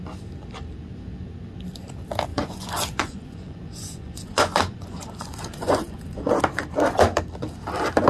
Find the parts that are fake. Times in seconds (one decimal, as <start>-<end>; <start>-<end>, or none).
2.3-6.4